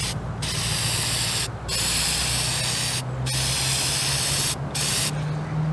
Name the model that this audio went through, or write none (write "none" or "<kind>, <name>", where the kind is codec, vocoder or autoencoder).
none